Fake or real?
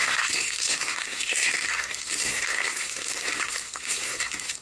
fake